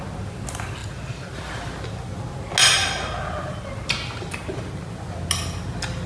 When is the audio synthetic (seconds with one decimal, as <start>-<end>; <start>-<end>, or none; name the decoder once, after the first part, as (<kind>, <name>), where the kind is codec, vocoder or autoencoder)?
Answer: none